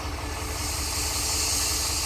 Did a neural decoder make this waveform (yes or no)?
no